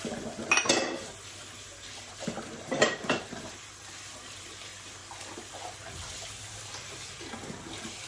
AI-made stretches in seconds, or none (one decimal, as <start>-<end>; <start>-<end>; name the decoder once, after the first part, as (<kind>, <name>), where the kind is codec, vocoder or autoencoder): 0.0-0.4 (vocoder, BigVGAN v2); 2.6-5.0